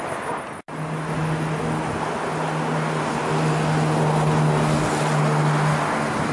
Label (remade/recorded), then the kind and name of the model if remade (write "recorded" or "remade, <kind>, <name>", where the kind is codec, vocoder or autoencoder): recorded